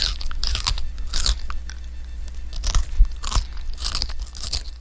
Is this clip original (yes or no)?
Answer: yes